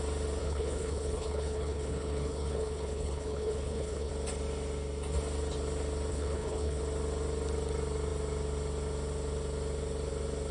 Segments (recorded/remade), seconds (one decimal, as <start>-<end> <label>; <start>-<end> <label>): 0.0-0.4 recorded; 0.4-4.1 remade; 4.1-6.1 recorded; 6.1-6.8 remade; 6.8-10.5 recorded